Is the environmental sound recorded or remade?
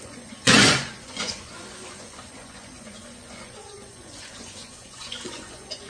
remade